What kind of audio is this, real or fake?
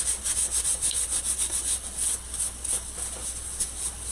real